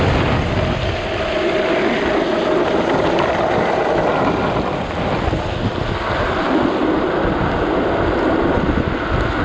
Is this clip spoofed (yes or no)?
no